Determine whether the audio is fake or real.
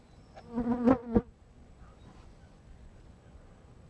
fake